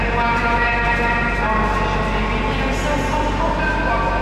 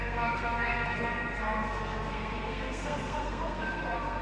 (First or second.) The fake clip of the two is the second